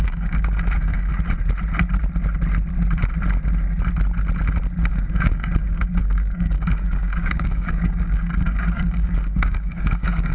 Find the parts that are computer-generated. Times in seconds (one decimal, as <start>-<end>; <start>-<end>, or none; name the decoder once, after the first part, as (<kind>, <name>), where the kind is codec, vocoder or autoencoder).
0.0-1.1 (codec, DAC); 4.9-10.3